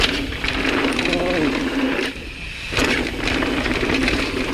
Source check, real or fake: real